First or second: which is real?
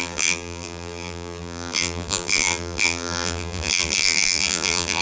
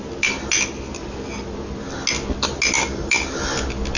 second